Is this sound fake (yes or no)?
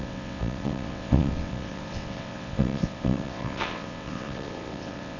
yes